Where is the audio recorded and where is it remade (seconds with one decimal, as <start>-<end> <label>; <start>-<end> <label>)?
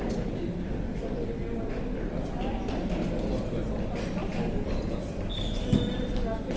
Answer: 0.0-6.6 recorded